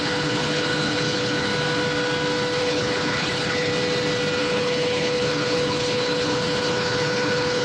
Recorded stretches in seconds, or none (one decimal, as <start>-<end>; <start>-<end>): 1.5-2.6; 3.7-4.4